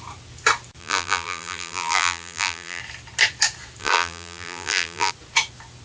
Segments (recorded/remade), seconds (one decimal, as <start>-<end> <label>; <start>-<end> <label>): 0.0-0.8 recorded; 0.8-2.8 remade; 2.8-3.8 recorded; 3.8-5.1 remade; 5.1-5.8 recorded